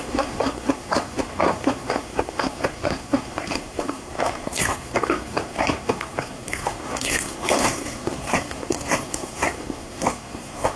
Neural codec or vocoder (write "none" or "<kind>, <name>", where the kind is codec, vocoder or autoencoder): codec, SNAC